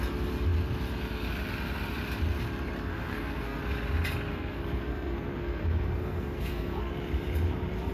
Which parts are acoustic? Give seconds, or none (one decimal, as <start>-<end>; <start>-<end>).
0.0-2.9; 3.6-4.3; 6.9-7.9

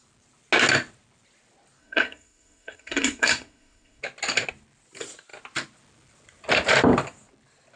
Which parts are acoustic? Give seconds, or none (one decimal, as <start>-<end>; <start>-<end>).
0.0-1.8; 4.0-7.8